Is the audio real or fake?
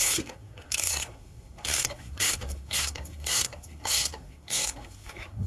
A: fake